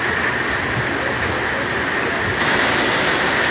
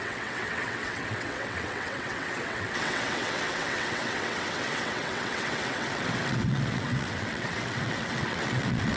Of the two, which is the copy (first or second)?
second